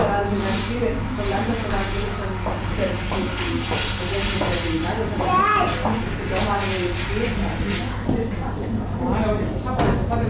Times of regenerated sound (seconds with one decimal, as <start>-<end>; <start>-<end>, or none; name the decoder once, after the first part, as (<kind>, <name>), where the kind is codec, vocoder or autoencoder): none